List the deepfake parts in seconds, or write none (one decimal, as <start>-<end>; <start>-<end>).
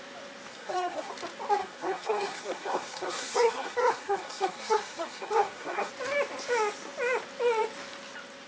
0.5-1.1; 1.6-5.9